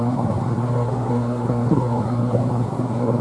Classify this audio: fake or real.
fake